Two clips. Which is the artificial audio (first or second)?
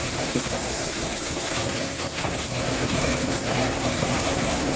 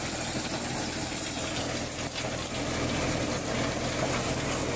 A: first